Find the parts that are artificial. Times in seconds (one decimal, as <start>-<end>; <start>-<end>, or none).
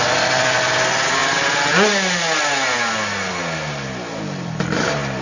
none